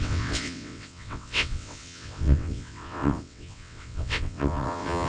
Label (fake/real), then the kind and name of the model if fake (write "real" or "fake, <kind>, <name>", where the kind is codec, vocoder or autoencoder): fake, vocoder, WaveNeXt